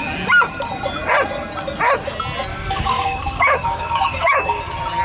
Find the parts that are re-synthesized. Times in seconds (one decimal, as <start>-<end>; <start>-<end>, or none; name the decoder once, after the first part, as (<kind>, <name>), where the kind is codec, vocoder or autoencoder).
2.5-4.6 (codec, DAC)